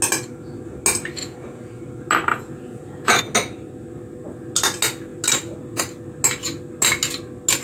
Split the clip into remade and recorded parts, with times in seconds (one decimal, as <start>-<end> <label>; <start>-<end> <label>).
0.0-1.2 recorded; 1.2-1.8 remade; 1.8-2.3 recorded; 2.3-3.2 remade; 3.2-7.6 recorded